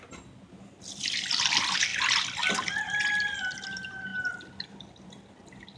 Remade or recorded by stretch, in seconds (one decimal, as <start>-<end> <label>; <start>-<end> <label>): 0.0-5.8 recorded